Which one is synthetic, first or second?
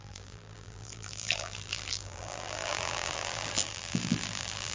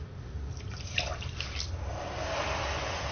first